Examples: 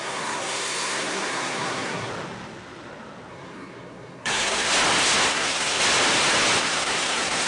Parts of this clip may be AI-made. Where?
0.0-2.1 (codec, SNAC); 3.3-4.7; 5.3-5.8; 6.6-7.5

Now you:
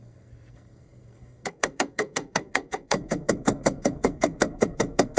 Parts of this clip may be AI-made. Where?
0.0-5.2 (codec, SNAC)

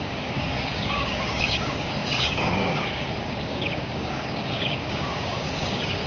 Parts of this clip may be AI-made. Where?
0.0-6.1 (codec, DAC)

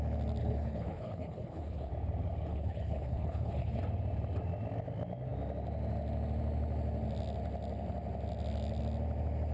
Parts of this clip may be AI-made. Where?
0.4-1.9 (codec, HILCodec); 2.5-3.8

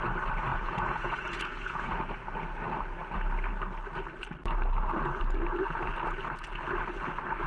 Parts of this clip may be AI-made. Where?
0.5-2.0 (vocoder, Vocos)

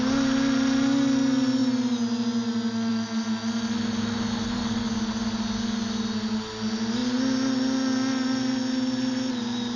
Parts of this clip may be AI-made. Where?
none